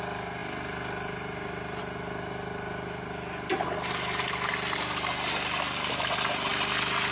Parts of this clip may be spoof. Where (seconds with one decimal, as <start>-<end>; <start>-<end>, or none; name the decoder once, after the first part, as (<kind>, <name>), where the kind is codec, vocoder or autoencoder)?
none